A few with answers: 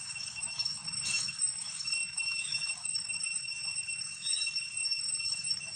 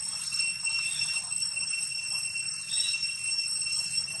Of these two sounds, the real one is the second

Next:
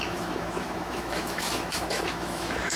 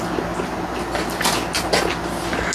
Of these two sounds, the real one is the second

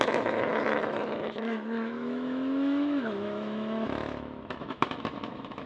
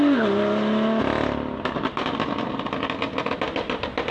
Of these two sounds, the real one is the second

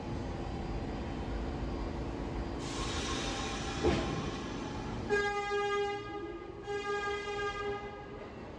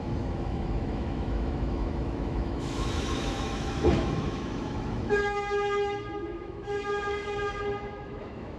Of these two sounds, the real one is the first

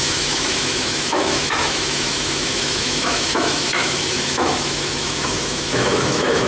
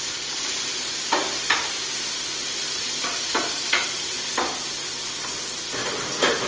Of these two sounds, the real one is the second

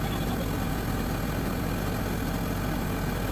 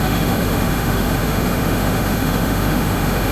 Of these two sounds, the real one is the first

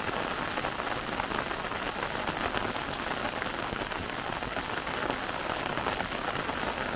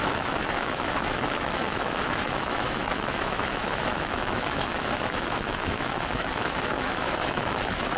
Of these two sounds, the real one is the first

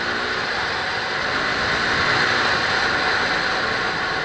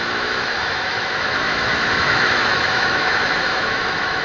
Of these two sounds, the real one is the first